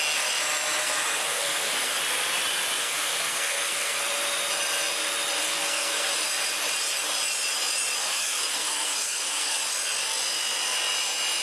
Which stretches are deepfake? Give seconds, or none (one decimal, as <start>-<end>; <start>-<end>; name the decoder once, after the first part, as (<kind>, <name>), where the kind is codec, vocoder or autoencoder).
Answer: 0.8-2.0 (codec, SNAC); 2.8-4.0; 5.4-6.1; 8.0-9.6